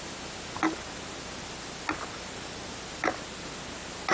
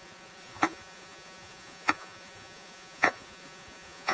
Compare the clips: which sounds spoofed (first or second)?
second